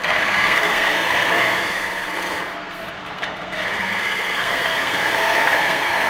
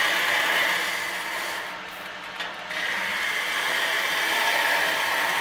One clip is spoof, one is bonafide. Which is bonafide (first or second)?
second